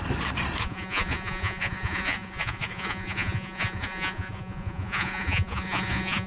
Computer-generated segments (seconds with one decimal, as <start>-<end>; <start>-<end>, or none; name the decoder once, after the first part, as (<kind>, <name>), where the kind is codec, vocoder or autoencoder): 0.6-6.3 (vocoder, Vocos)